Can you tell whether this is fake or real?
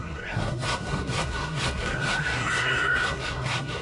fake